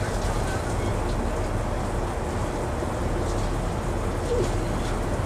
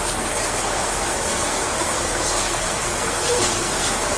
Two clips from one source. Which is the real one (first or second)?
first